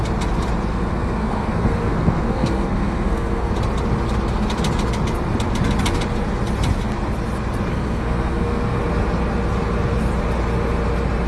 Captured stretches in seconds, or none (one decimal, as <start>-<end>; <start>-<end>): 0.0-0.7; 3.5-7.7; 8.8-11.3